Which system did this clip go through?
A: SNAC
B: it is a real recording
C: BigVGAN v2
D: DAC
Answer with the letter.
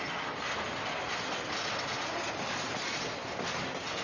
B